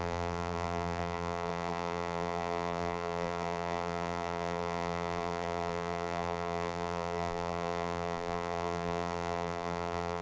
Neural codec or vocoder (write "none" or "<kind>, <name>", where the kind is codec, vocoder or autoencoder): vocoder, BigVGAN v2